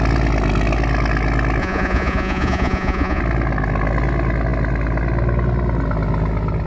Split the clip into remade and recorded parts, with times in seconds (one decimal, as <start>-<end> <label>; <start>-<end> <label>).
0.0-1.6 recorded; 1.6-3.2 remade; 3.2-6.7 recorded